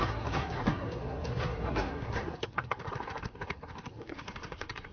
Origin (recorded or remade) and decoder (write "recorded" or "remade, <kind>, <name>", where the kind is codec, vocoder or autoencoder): remade, codec, SNAC